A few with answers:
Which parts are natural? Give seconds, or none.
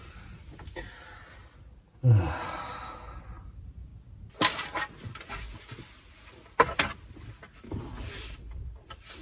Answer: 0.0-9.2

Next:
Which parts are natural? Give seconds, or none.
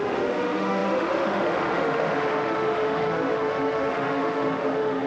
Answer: none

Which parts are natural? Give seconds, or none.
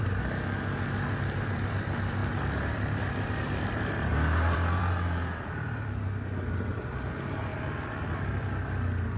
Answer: 0.0-4.1; 4.8-7.5; 8.5-9.2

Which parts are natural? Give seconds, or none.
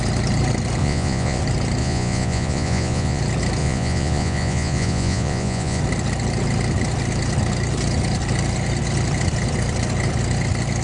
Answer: 0.0-0.8; 1.4-1.8; 3.2-3.6; 5.8-10.8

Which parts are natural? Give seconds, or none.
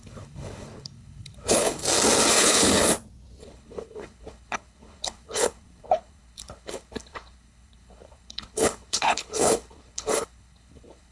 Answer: 1.8-2.3; 2.7-3.4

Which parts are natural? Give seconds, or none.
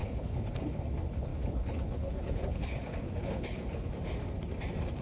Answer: 3.9-5.0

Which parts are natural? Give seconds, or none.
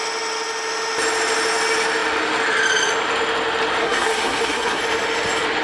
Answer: 0.0-3.8; 4.8-5.6